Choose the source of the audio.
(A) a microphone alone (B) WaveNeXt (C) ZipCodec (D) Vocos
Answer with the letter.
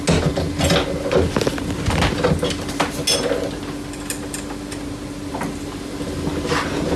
A